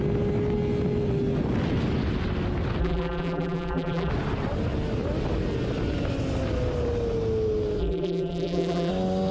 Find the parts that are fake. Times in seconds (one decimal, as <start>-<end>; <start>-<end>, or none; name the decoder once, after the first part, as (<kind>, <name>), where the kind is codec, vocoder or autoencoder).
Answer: 2.8-4.1 (vocoder, BigVGAN v2); 7.8-8.9